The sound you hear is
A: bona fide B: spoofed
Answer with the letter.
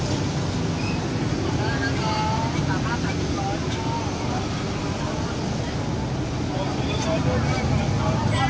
A